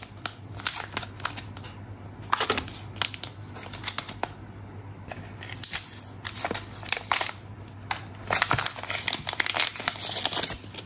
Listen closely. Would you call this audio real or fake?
real